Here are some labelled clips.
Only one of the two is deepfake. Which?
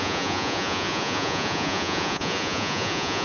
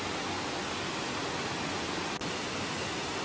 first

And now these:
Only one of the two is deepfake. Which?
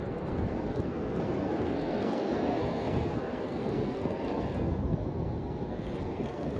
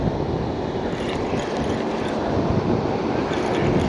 first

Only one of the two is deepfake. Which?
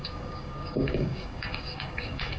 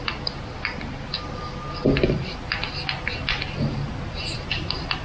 first